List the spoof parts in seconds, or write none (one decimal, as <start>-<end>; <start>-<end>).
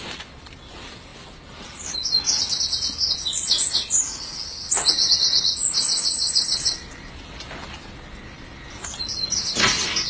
none